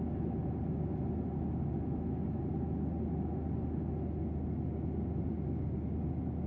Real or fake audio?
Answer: real